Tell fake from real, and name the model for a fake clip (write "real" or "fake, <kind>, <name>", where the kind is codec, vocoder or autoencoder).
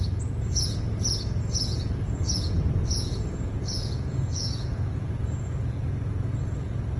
fake, vocoder, Vocos